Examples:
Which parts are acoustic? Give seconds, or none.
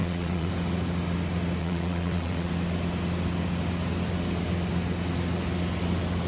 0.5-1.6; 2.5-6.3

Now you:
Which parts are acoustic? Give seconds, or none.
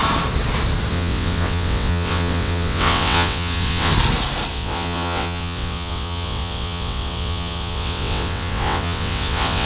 0.0-0.9; 3.9-4.5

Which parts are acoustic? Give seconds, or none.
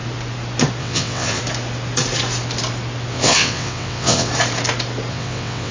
0.0-0.8; 1.4-3.1; 4.3-5.1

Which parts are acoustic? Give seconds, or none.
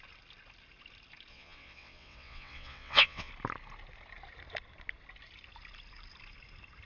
0.0-1.3; 3.3-6.9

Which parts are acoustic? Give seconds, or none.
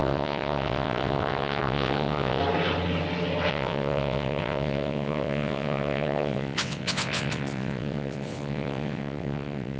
2.4-3.5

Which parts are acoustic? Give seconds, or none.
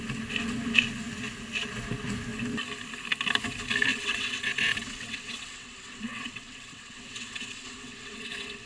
0.0-3.9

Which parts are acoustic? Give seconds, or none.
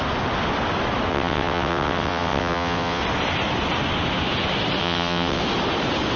0.0-1.1; 3.0-4.8; 5.4-6.2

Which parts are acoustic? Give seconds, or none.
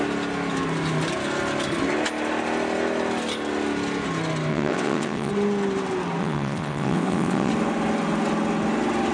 0.0-4.5; 5.3-6.2; 7.5-9.1